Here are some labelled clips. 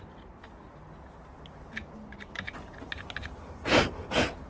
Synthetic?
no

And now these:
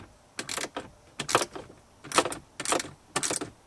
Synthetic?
no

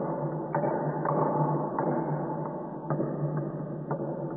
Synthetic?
no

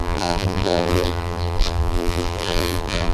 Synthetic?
yes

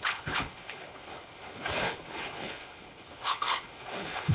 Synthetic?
yes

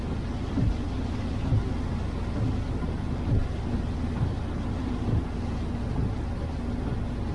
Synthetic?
no